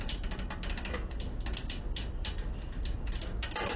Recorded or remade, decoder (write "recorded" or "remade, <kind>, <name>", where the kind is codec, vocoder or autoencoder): recorded